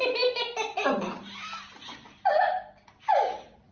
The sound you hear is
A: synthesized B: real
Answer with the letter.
B